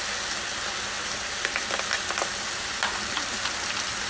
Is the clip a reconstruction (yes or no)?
no